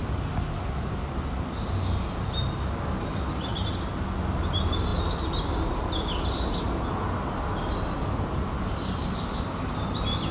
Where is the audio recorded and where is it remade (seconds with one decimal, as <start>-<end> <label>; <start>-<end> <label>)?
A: 0.0-3.5 recorded; 3.5-4.4 remade; 4.4-10.3 recorded